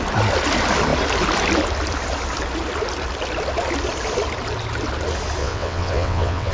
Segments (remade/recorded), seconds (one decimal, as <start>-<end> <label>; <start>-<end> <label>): 0.0-5.4 recorded; 5.4-6.5 remade